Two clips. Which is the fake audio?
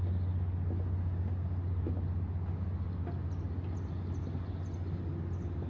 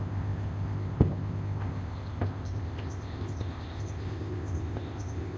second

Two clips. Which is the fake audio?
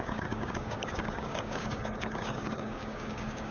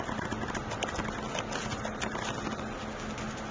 first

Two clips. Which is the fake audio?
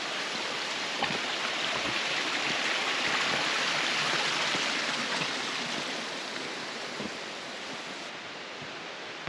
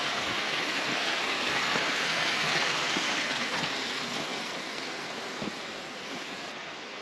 second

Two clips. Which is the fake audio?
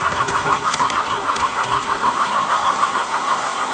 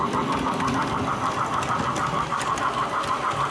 first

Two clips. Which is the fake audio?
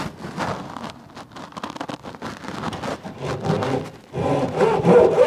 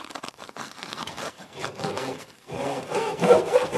second